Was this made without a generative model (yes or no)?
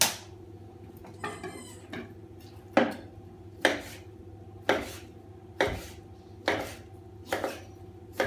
yes